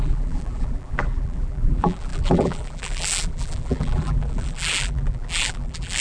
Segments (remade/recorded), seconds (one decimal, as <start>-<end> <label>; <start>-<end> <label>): 0.0-6.0 remade